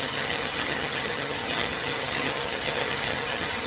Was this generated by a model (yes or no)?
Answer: yes